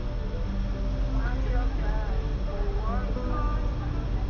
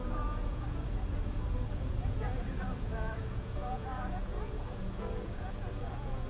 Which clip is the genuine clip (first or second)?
first